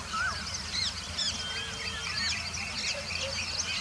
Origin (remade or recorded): recorded